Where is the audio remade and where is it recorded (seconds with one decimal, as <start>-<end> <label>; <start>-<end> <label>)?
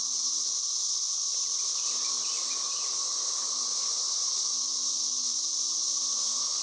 0.0-3.7 recorded; 3.7-4.3 remade; 4.3-6.6 recorded